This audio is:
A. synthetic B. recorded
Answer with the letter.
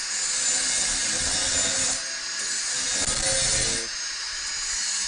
B